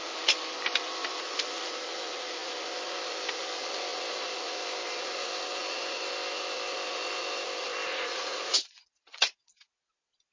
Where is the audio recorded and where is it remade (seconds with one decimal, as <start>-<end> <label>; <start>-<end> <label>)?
0.0-7.9 recorded; 7.9-9.9 remade; 9.9-10.3 recorded